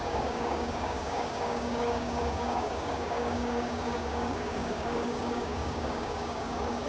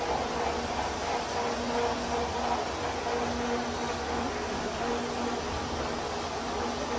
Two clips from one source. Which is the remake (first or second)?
first